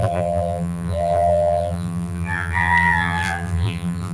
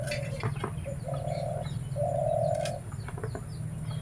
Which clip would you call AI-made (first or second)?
first